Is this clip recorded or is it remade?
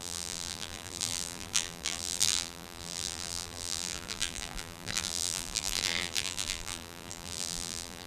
remade